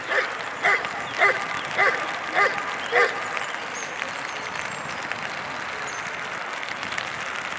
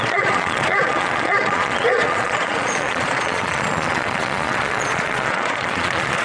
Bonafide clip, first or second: first